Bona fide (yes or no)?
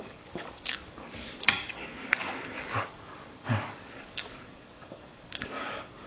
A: no